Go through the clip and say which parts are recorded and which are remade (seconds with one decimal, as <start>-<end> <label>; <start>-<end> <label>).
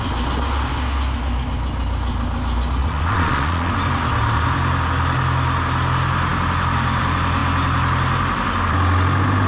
0.0-2.8 recorded; 2.8-3.7 remade; 3.7-9.5 recorded